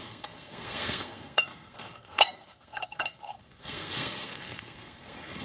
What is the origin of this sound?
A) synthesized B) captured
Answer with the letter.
A